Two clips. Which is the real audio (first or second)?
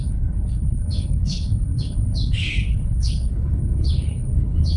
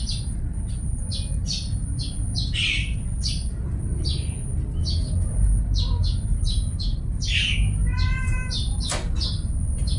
second